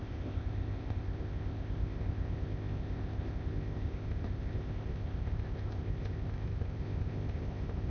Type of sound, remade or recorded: remade